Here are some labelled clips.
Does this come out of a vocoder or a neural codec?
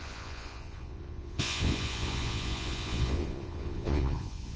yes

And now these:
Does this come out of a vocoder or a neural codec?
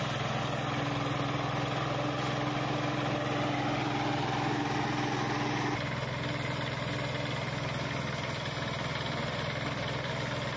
no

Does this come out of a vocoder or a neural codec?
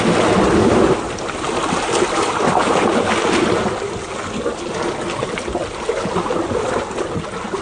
no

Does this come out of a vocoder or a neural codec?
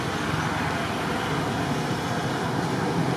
no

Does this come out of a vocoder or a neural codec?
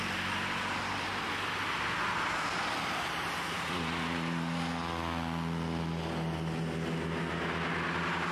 no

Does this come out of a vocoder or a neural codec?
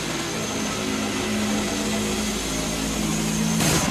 no